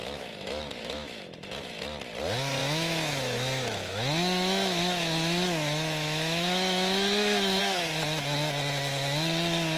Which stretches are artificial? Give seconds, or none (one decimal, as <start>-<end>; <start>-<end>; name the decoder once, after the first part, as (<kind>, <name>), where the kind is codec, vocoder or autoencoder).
0.0-1.8 (autoencoder, DAC-VAE); 2.6-7.6